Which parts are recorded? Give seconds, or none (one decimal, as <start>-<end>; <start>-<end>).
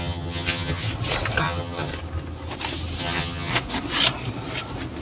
0.8-1.4; 1.9-3.0; 3.5-5.0